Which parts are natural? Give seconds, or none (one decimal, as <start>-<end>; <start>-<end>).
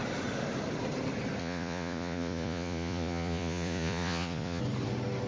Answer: 0.0-1.4; 4.6-5.3